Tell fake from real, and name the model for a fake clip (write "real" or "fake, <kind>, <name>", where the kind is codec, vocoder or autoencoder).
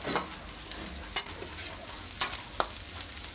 real